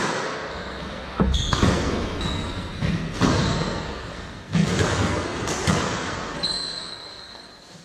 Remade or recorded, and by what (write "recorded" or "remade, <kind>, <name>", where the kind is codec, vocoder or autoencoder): remade, codec, SNAC